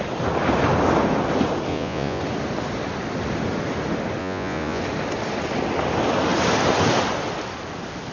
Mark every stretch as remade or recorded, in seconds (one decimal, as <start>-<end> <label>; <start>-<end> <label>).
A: 0.0-1.7 recorded; 1.7-2.2 remade; 2.2-4.2 recorded; 4.2-4.8 remade; 4.8-8.1 recorded